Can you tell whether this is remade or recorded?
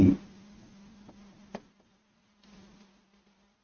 recorded